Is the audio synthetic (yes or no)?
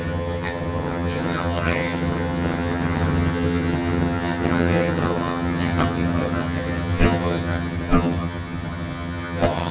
yes